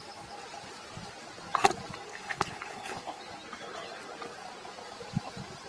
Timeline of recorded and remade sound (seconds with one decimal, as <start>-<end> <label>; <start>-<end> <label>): 0.0-2.1 recorded; 2.1-3.2 remade; 3.2-5.7 recorded